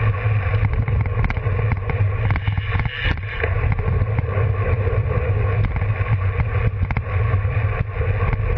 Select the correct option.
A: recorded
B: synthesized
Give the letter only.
A